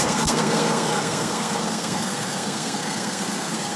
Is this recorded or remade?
remade